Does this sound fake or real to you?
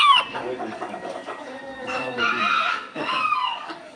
fake